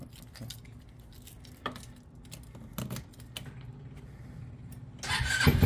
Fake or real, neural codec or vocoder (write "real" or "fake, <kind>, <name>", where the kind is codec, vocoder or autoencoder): real